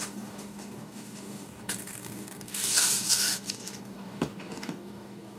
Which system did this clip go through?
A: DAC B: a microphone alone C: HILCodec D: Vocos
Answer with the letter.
A